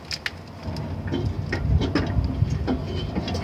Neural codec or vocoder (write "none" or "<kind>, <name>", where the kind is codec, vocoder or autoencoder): none